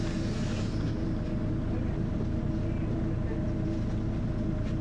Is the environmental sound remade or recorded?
recorded